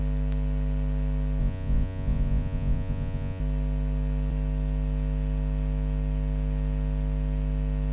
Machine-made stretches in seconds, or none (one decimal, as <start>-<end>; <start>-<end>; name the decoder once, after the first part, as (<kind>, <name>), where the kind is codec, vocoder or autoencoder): 1.4-3.4 (vocoder, Vocos)